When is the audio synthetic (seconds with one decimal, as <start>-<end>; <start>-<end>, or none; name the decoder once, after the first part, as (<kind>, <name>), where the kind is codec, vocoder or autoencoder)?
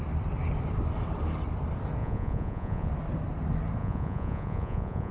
2.0-2.9 (vocoder, Vocos); 3.8-5.1